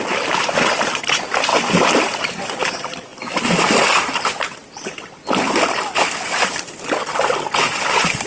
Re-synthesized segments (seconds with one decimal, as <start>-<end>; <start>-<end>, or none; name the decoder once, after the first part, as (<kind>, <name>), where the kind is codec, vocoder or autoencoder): none

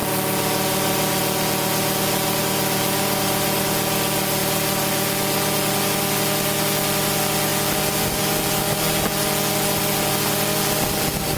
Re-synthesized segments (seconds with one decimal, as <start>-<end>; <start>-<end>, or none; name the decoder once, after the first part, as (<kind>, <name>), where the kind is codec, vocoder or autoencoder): none